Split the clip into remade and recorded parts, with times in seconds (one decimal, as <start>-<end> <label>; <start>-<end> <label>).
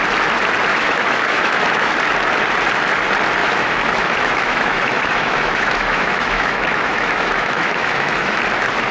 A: 0.0-0.7 recorded; 0.7-1.9 remade; 1.9-3.4 recorded; 3.4-8.4 remade; 8.4-8.9 recorded